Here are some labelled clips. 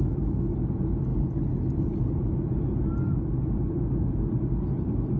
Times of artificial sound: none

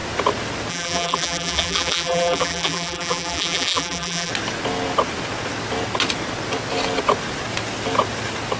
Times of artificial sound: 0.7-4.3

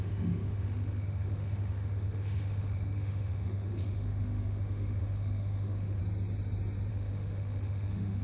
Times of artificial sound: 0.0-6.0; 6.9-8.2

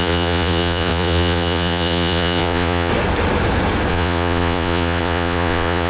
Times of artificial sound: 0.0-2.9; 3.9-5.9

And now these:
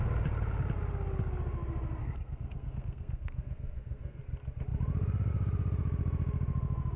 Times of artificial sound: 2.0-4.2

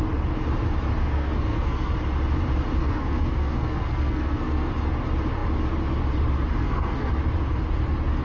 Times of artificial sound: 1.0-1.9; 2.8-4.7; 6.6-7.1